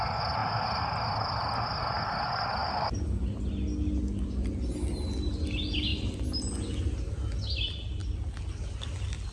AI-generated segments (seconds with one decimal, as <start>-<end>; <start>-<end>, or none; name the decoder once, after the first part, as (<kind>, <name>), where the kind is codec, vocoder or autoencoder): 2.6-3.4 (vocoder, BigVGAN v2)